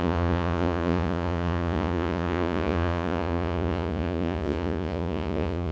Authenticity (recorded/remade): remade